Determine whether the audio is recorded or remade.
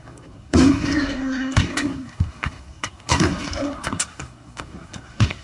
remade